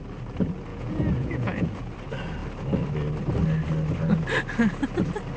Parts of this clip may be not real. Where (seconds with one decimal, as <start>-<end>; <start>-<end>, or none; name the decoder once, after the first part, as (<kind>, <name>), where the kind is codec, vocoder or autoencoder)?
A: 0.7-1.9 (vocoder, Vocos)